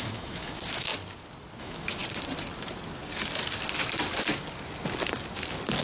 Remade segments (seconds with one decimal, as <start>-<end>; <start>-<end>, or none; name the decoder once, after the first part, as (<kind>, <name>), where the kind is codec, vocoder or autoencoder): 0.0-0.9 (autoencoder, DAC-VAE); 1.6-2.0